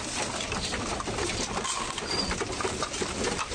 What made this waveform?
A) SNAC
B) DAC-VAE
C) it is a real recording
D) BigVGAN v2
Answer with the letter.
C